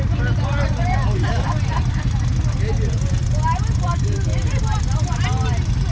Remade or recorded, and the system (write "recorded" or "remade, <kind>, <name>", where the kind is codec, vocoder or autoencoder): recorded